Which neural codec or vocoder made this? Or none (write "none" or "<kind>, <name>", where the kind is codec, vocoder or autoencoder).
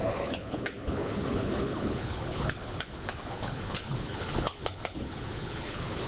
codec, HILCodec